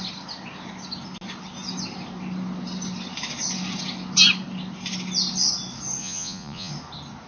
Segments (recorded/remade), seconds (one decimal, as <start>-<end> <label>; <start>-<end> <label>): 0.0-6.0 recorded; 6.0-6.7 remade; 6.7-7.3 recorded